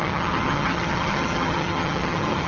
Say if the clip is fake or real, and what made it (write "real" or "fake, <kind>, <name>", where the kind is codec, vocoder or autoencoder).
fake, vocoder, HiFi-GAN